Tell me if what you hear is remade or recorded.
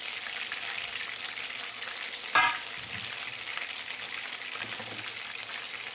recorded